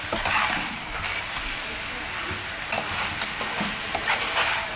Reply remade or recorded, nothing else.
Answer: recorded